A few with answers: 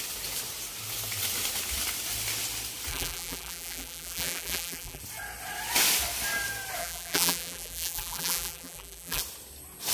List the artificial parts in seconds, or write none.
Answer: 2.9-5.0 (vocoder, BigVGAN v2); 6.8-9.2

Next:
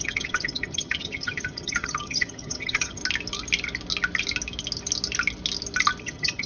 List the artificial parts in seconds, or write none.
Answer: 0.0-3.0 (vocoder, HiFi-GAN); 6.0-6.5

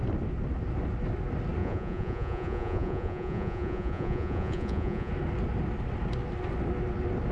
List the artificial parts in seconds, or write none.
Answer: 1.6-5.1 (vocoder, Vocos)

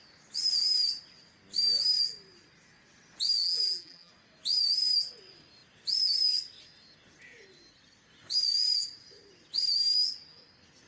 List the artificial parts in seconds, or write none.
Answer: 3.4-4.1 (vocoder, BigVGAN v2)

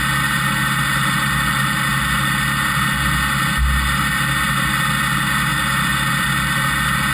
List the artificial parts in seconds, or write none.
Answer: none

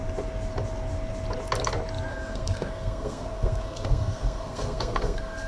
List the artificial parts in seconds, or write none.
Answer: 2.1-5.5 (codec, SNAC)